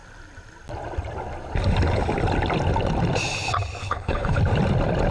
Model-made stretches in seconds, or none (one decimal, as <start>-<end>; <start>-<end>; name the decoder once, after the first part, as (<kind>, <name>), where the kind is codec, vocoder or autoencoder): 3.8-4.4 (codec, HILCodec)